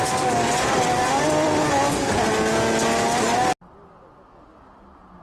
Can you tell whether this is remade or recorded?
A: recorded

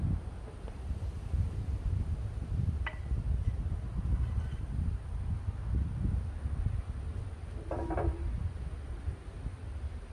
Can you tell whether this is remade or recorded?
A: recorded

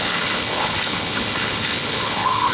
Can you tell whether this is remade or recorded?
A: remade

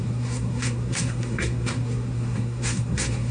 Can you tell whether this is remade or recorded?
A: remade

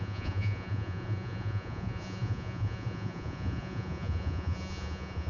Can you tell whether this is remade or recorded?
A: remade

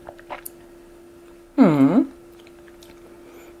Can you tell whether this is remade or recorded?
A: recorded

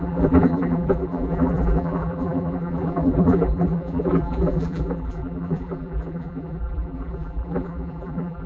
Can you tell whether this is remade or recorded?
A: remade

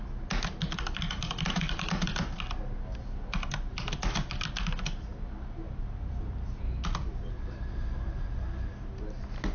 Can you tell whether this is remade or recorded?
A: recorded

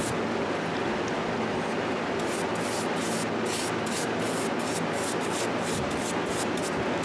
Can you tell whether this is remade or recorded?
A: recorded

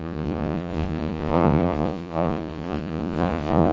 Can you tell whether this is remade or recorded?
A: remade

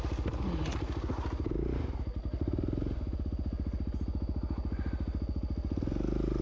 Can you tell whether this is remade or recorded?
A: recorded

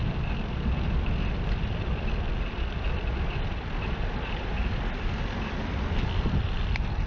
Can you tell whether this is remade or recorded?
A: recorded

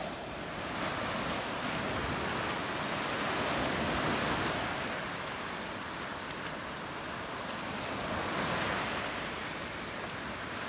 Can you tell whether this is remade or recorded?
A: recorded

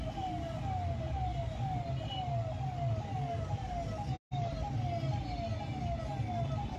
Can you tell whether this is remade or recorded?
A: recorded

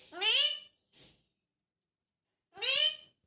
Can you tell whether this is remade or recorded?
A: recorded